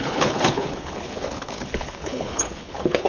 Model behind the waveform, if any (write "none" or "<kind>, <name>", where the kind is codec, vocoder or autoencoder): codec, HILCodec